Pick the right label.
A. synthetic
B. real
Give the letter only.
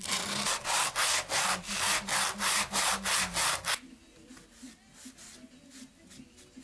B